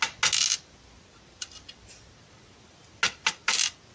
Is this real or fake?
real